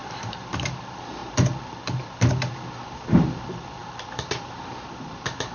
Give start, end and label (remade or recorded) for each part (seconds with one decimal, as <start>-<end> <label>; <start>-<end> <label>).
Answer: 0.0-5.5 recorded